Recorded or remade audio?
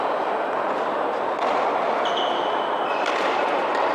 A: recorded